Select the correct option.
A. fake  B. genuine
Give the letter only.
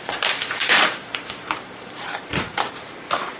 A